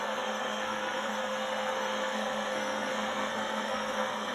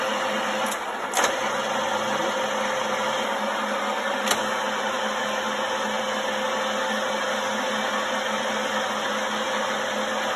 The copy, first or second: first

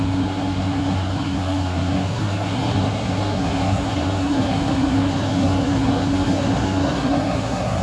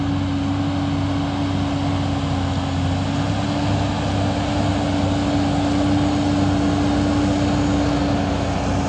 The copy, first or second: first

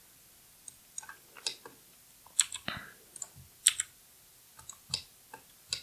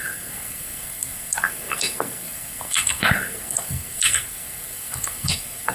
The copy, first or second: second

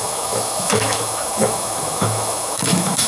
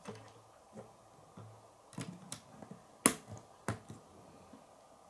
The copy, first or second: first